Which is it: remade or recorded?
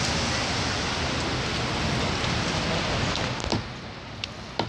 recorded